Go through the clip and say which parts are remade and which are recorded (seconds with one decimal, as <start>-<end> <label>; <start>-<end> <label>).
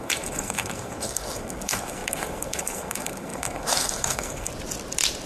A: 0.0-4.5 remade; 4.5-5.3 recorded